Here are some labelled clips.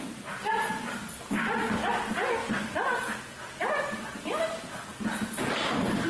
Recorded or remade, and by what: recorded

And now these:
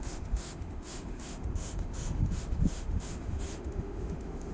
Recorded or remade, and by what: remade, autoencoder, DAC-VAE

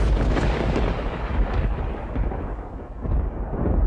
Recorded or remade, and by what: remade, codec, DAC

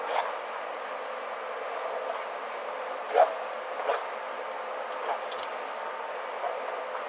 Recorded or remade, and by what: recorded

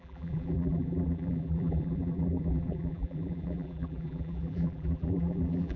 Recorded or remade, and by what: remade, vocoder, BigVGAN v2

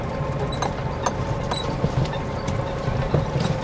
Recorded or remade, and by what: recorded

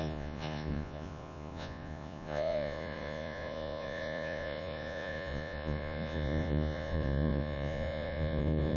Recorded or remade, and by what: remade, vocoder, Vocos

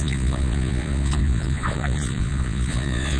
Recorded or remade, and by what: remade, vocoder, Vocos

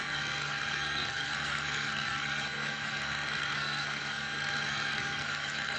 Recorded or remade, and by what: remade, codec, SNAC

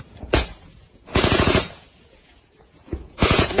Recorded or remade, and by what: remade, vocoder, Vocos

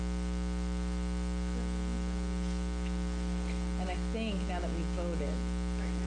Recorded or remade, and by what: recorded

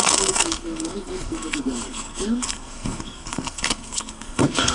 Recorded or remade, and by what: remade, codec, SNAC